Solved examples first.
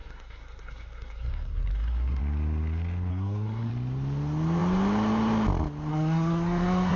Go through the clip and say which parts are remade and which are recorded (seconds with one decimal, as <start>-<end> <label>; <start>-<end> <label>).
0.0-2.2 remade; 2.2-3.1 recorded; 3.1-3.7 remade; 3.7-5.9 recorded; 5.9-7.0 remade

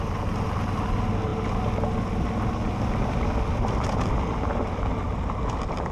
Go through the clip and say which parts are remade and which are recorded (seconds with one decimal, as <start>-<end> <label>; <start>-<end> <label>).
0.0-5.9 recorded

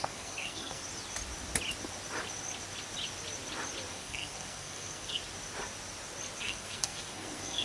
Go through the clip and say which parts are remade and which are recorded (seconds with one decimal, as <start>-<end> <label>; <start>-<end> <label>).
0.0-0.8 remade; 0.8-3.9 recorded; 3.9-5.2 remade; 5.2-6.4 recorded; 6.4-7.6 remade